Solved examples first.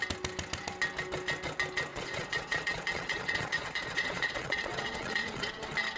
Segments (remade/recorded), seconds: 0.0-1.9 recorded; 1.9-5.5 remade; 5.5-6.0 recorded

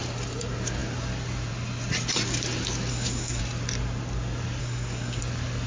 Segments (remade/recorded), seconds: 0.0-2.9 recorded; 2.9-3.4 remade; 3.4-4.6 recorded; 4.6-5.2 remade; 5.2-5.7 recorded